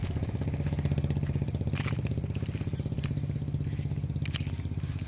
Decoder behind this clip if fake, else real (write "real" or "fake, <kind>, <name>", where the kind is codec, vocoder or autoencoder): real